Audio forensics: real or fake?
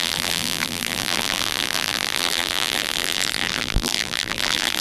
fake